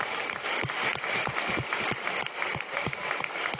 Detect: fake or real real